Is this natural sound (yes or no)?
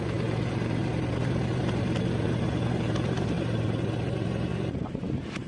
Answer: no